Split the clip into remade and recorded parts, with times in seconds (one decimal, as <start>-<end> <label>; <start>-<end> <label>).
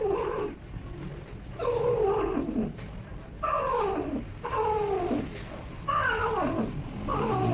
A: 0.0-7.5 recorded